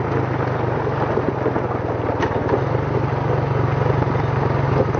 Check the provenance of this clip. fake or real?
real